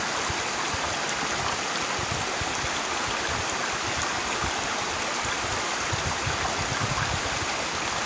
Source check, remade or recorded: recorded